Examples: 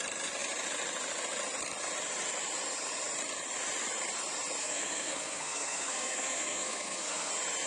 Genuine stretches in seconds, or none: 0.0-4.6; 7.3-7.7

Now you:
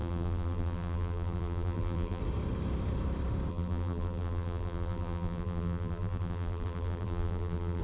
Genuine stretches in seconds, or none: 2.2-3.5